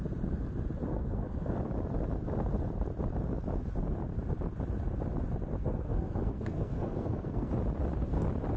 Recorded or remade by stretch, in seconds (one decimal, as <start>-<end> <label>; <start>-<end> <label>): 0.0-0.9 recorded; 0.9-1.6 remade; 1.6-5.6 recorded; 5.6-7.5 remade; 7.5-8.6 recorded